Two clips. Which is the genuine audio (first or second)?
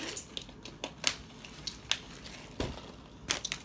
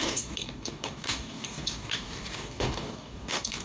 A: first